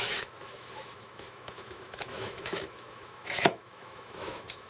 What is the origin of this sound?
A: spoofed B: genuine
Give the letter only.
A